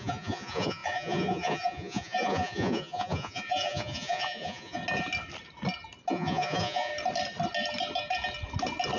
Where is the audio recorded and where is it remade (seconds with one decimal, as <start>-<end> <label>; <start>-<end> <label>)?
0.0-4.8 remade; 4.8-6.1 recorded; 6.1-6.9 remade; 6.9-9.0 recorded